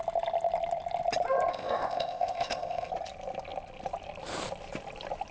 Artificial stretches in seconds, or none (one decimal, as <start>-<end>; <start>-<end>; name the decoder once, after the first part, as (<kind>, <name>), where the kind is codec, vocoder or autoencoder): 1.5-2.9 (codec, ZipCodec)